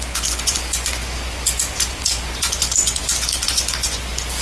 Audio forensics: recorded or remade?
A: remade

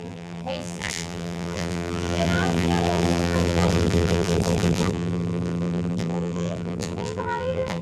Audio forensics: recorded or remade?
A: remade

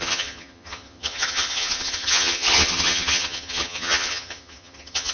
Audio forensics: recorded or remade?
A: remade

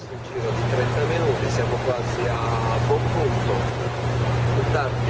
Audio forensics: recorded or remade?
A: recorded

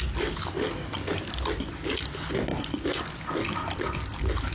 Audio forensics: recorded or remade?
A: recorded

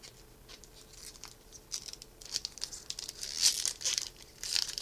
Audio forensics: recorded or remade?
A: recorded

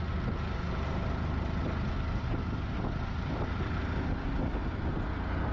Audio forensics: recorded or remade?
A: recorded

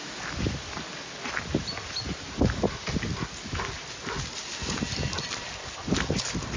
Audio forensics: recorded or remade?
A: recorded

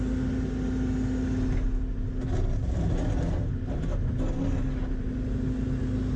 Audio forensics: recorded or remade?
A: recorded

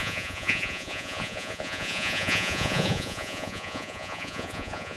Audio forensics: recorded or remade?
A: remade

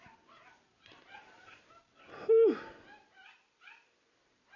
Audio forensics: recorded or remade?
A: recorded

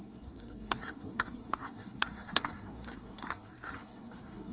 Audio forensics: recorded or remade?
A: remade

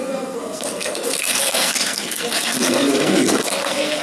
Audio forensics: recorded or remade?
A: remade